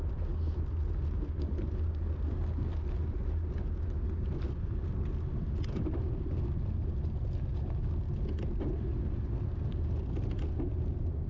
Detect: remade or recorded recorded